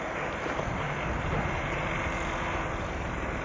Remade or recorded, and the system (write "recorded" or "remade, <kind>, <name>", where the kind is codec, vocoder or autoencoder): remade, vocoder, BigVGAN v2